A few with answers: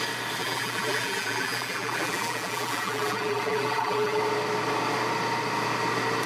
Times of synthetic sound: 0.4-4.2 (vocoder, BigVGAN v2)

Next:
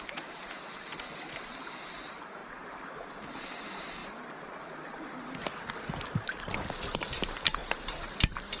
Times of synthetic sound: 0.0-4.0 (vocoder, BigVGAN v2); 6.1-8.6

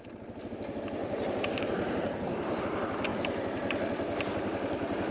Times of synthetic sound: 1.0-2.6 (vocoder, BigVGAN v2); 3.1-5.1

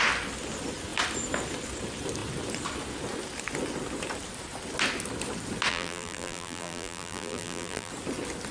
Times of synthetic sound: 5.7-7.9 (vocoder, BigVGAN v2)

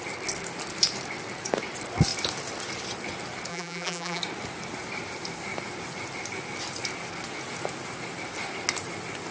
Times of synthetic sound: 3.5-4.2 (vocoder, BigVGAN v2)